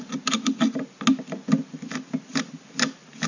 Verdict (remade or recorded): recorded